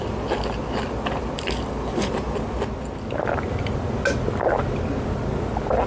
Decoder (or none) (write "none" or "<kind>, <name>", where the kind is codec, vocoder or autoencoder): none